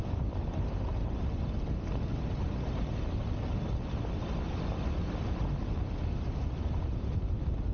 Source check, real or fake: real